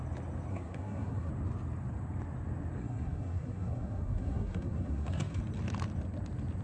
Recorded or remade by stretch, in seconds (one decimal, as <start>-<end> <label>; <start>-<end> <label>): 0.0-0.5 recorded; 0.5-1.3 remade; 1.3-2.8 recorded; 2.8-5.4 remade; 5.4-6.6 recorded